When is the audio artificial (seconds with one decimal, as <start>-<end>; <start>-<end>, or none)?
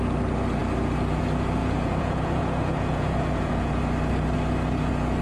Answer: 1.6-3.8